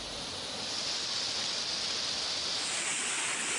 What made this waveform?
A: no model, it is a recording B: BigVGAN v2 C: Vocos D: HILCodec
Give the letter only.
A